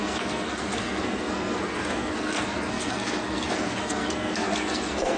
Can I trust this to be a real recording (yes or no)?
no